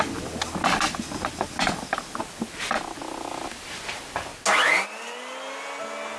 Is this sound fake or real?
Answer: real